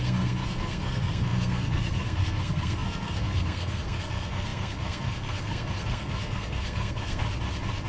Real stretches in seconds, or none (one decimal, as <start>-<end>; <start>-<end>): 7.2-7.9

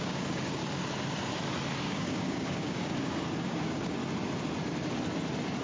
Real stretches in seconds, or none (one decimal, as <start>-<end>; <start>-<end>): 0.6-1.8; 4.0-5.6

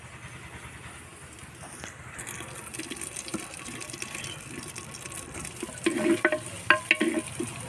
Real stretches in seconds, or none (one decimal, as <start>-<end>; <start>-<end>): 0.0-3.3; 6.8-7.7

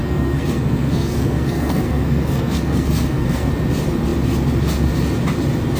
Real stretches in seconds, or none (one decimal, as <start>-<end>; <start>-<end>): 3.5-5.8